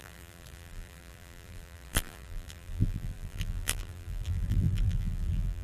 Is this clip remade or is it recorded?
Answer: remade